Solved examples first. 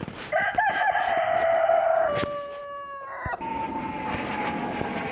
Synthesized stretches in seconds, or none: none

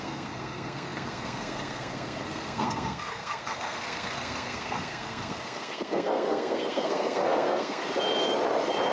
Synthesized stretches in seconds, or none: 0.0-7.8 (codec, SNAC)

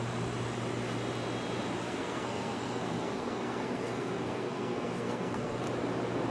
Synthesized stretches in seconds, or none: 1.8-5.6 (codec, SNAC)

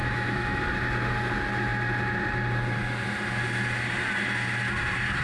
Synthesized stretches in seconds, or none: 0.0-0.6 (autoencoder, DAC-VAE)

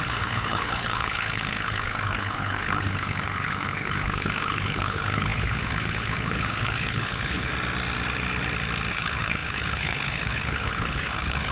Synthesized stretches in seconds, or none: 0.0-7.5 (codec, HILCodec); 8.9-11.5

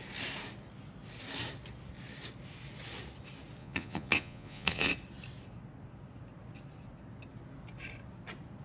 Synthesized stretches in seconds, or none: 3.6-4.9 (vocoder, Vocos)

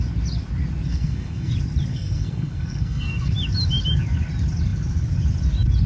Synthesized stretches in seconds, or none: 0.9-1.5 (codec, SNAC); 1.9-3.3

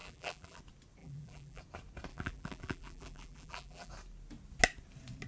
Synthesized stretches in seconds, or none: 0.0-0.6 (vocoder, BigVGAN v2); 1.0-1.6; 2.1-3.9